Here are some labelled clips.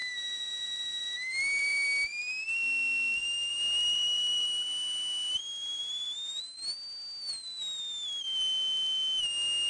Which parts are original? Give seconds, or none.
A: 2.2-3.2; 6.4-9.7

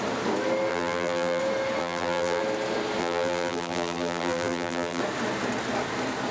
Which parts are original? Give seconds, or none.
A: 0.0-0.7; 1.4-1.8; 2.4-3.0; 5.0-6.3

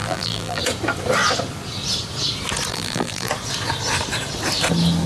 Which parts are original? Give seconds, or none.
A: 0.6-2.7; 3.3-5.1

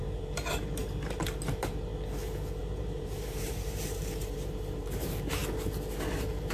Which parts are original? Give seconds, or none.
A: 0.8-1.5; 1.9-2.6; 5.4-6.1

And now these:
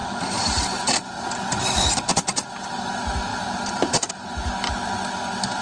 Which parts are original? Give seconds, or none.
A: 1.1-3.3; 4.1-5.6

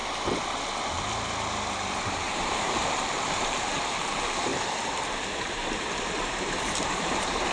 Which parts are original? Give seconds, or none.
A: 0.0-2.1